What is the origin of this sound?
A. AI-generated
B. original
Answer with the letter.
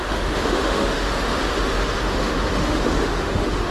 A